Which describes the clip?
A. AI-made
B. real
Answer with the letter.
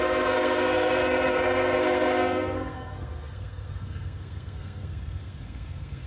A